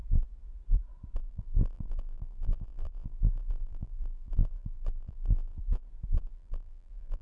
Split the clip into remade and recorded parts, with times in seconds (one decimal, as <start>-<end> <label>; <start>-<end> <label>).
0.0-1.3 recorded; 1.3-5.6 remade; 5.6-6.3 recorded; 6.3-7.2 remade